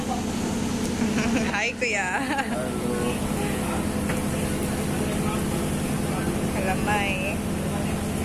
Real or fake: real